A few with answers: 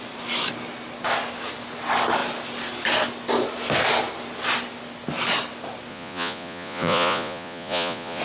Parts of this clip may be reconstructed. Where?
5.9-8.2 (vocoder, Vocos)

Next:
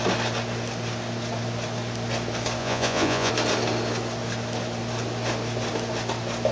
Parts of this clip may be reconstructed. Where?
2.6-3.3 (vocoder, Vocos)

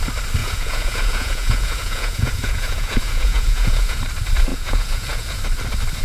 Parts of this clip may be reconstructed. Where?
0.4-4.0 (vocoder, Vocos); 4.5-5.4

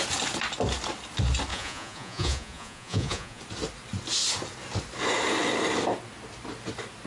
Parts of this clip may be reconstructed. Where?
1.5-3.4 (vocoder, Vocos)

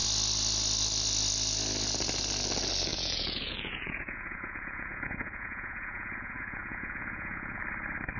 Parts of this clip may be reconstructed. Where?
2.9-7.6 (vocoder, Vocos)

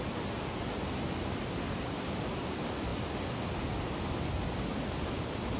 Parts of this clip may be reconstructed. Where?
none